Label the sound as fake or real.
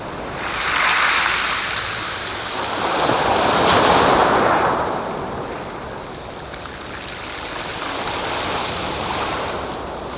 real